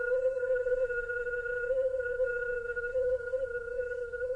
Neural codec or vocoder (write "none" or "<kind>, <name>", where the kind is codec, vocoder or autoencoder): codec, SNAC